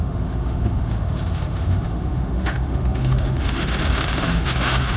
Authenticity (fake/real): fake